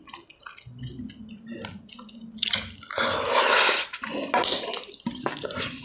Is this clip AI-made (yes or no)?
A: no